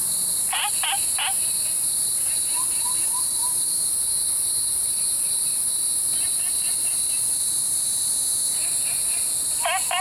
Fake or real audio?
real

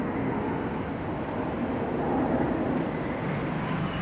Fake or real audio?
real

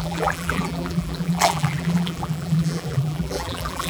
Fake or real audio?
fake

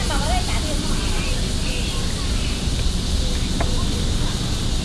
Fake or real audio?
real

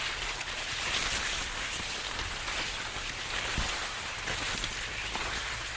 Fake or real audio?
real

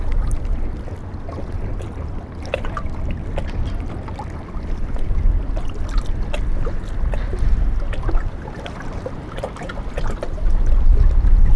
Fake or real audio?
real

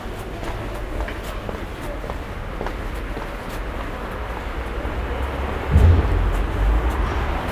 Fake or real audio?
real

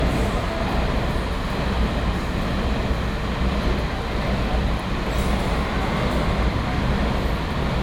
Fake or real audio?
real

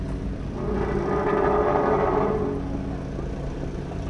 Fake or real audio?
real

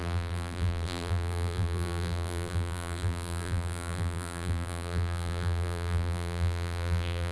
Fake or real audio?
fake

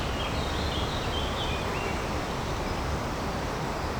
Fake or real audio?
fake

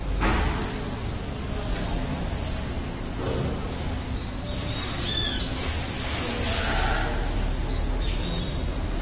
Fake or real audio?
real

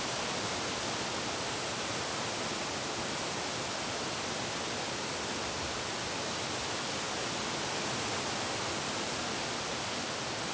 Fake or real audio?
real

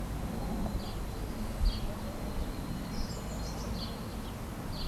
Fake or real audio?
real